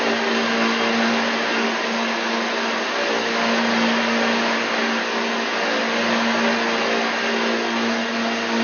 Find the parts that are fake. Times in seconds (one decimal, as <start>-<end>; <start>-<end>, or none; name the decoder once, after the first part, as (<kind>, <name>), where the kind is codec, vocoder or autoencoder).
none